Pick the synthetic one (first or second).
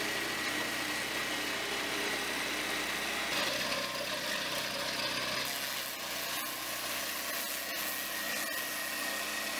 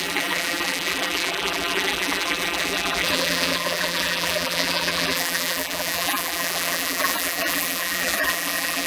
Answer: second